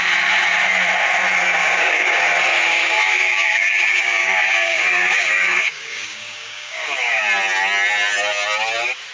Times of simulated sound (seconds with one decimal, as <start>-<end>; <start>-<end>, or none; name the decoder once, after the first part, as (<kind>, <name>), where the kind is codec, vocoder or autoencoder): 1.6-2.2 (codec, DAC); 2.7-7.2